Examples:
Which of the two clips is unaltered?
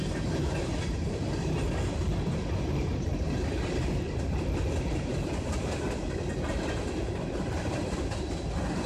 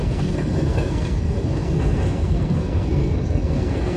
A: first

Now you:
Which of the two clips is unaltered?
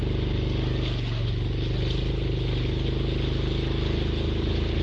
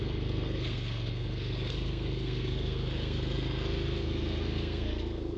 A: first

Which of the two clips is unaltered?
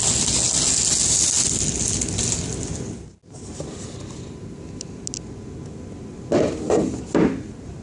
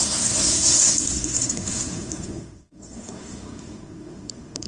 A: first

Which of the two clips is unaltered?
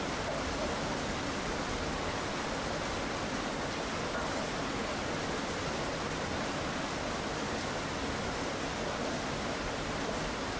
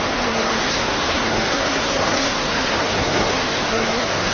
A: first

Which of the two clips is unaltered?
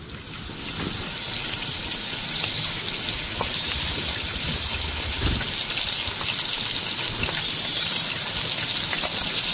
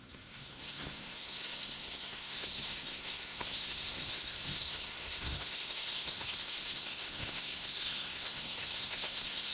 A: first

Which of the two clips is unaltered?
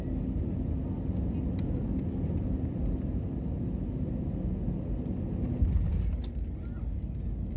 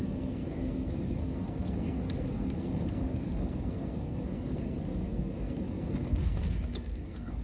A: first